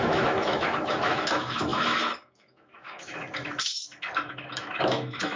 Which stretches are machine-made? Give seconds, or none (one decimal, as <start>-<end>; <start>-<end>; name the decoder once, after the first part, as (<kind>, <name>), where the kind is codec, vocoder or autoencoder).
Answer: 0.0-5.4 (autoencoder, DAC-VAE)